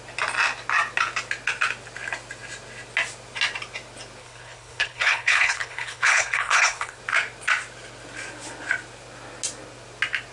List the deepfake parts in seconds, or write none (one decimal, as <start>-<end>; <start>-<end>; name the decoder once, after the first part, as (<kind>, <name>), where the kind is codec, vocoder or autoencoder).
4.2-7.0 (codec, HILCodec)